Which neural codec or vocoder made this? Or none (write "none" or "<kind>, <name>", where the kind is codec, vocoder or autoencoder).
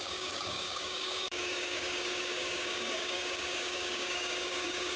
codec, DAC